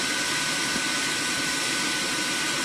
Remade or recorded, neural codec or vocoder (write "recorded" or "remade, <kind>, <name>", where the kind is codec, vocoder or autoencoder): recorded